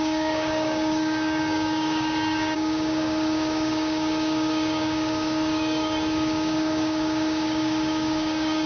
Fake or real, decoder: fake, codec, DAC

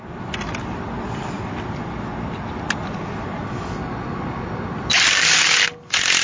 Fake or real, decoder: real